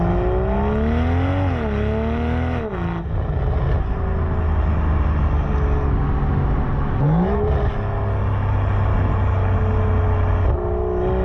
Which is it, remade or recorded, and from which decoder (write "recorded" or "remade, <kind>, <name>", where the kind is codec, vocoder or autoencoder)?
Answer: recorded